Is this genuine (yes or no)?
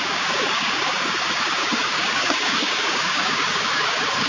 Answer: no